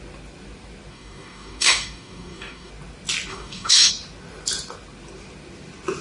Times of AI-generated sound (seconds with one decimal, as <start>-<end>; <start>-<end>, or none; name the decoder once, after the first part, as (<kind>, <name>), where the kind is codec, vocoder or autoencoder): 0.9-2.7 (codec, DAC); 3.3-3.9